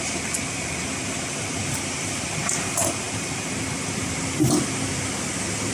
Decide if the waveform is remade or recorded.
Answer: recorded